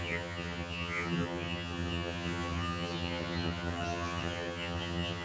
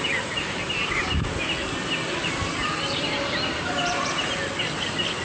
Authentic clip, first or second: second